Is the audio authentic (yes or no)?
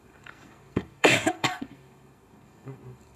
no